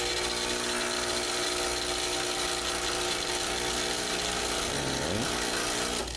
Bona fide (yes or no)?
yes